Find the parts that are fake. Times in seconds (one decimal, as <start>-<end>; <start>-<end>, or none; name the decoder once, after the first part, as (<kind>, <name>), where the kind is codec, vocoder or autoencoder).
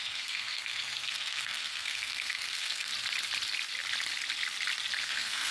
0.0-2.9 (codec, SNAC); 5.0-5.5